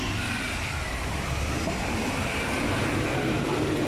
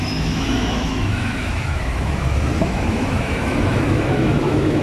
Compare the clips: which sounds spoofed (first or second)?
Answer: second